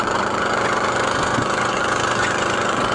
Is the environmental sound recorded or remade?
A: remade